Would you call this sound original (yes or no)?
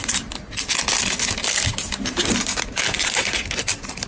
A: yes